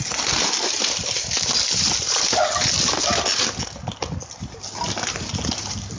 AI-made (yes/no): no